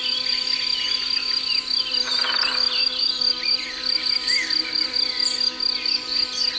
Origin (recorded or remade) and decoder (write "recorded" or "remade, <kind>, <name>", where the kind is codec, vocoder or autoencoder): recorded